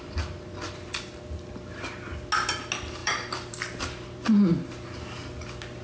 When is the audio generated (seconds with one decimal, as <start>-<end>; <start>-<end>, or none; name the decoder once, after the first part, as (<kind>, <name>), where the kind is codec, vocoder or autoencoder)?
3.0-4.2 (vocoder, BigVGAN v2)